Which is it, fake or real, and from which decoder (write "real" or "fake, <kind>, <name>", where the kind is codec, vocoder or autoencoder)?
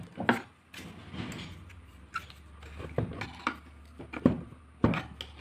real